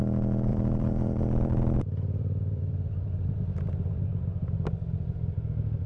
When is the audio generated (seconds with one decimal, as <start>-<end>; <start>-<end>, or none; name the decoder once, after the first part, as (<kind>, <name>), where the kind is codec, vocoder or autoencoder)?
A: 0.5-3.5 (vocoder, BigVGAN v2)